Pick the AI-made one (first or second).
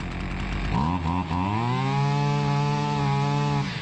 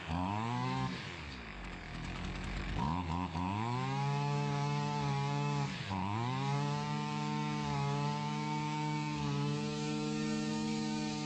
second